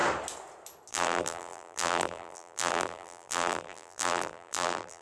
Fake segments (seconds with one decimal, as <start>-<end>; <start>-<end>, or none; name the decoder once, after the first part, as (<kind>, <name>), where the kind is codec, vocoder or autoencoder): 0.9-5.0 (vocoder, BigVGAN v2)